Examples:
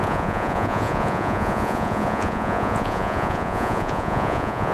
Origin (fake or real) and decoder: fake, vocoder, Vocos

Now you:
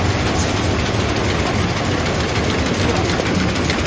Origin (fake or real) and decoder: real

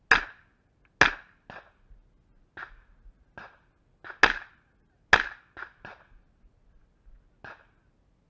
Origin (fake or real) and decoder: real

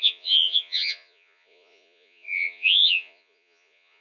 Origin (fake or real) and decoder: fake, vocoder, Vocos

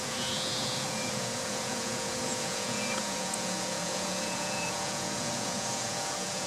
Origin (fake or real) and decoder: fake, vocoder, Vocos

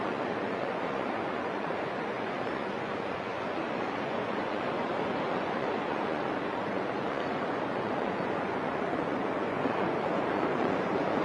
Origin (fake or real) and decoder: fake, vocoder, Vocos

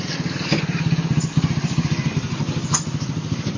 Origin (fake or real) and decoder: real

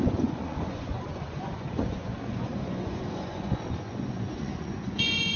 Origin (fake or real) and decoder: fake, vocoder, Vocos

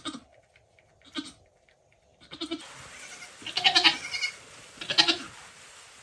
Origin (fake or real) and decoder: real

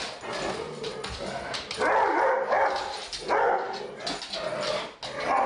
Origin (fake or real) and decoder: real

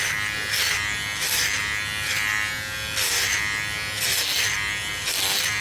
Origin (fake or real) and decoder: real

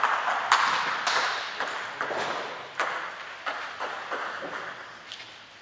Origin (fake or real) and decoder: real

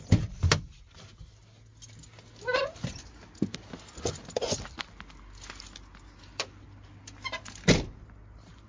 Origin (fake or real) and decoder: real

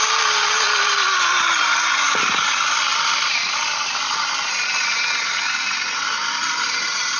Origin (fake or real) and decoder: real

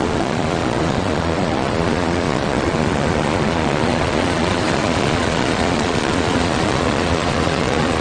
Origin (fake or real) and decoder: fake, vocoder, Vocos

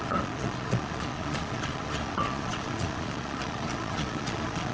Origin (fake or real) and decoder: fake, vocoder, Vocos